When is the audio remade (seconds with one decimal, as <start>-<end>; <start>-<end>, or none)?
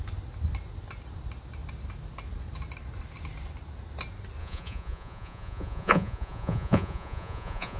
4.4-7.8